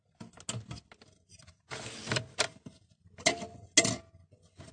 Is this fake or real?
real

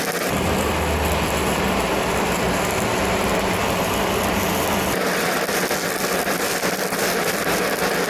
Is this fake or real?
real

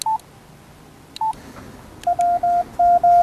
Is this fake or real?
real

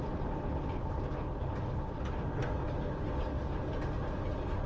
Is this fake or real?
real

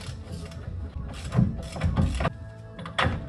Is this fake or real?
real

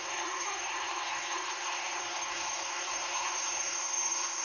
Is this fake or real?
fake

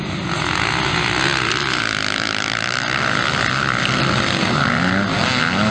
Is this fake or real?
real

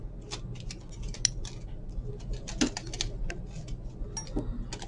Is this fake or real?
real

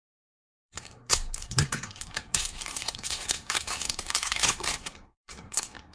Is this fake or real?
fake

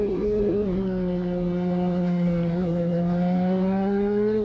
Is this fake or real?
fake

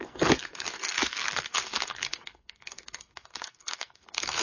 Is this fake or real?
fake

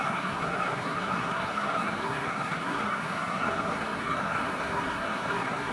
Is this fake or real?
fake